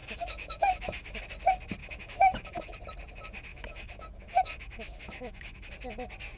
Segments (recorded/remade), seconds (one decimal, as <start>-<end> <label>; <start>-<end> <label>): 0.0-1.2 remade; 1.2-1.8 recorded; 1.8-2.7 remade; 2.7-3.5 recorded; 3.5-5.7 remade; 5.7-6.4 recorded